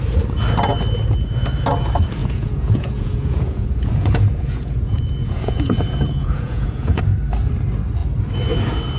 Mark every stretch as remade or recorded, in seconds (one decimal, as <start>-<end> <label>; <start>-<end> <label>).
0.0-2.2 recorded; 2.2-7.0 remade; 7.0-9.0 recorded